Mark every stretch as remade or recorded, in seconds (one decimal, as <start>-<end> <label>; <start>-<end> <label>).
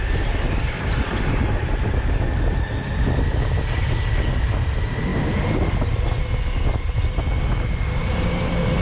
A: 0.0-8.8 recorded